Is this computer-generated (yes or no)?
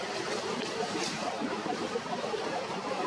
yes